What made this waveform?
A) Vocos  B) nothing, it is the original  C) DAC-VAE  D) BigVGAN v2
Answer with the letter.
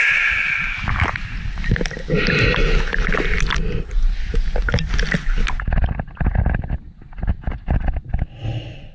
B